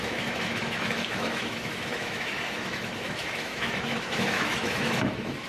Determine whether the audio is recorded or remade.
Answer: remade